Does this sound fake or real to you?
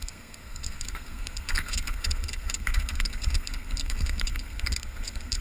fake